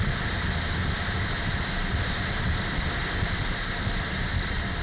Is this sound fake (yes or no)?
no